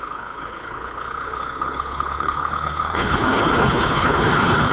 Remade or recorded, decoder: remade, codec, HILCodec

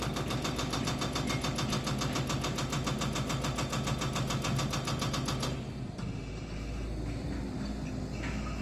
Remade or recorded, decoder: recorded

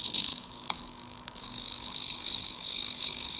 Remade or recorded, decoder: remade, codec, DAC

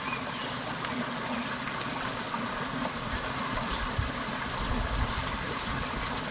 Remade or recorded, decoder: recorded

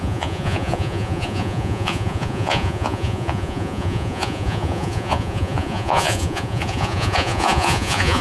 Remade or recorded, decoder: remade, vocoder, Vocos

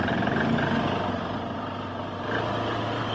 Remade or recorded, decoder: recorded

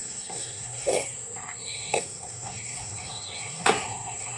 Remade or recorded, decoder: remade, codec, SNAC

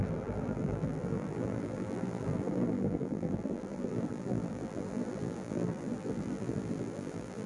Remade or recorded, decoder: remade, vocoder, BigVGAN v2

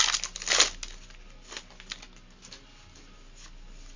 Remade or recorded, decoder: recorded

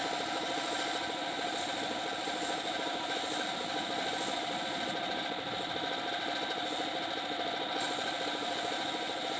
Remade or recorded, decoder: recorded